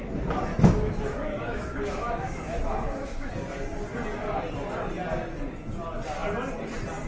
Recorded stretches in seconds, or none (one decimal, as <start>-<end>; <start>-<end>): 0.0-0.5; 3.3-7.1